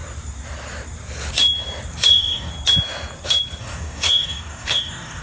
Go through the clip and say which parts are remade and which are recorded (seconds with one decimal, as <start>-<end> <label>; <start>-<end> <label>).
0.0-2.1 recorded; 2.1-2.5 remade; 2.5-3.6 recorded; 3.6-5.2 remade